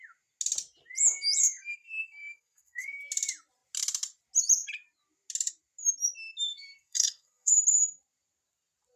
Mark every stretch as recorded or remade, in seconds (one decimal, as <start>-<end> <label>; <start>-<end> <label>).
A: 0.0-1.4 recorded; 1.4-3.0 remade; 3.0-6.5 recorded; 6.5-7.5 remade; 7.5-9.0 recorded